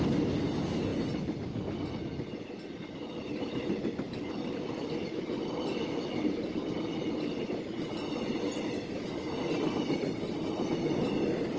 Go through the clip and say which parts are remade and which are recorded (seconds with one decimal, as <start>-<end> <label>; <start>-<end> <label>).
0.0-11.6 recorded